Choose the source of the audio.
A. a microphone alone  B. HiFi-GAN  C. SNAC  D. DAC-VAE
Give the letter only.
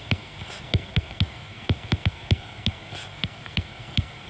C